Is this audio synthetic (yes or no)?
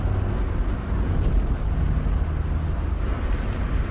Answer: no